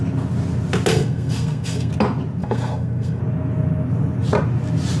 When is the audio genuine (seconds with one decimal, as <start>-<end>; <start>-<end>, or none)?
0.0-0.9; 1.9-2.4; 3.2-5.0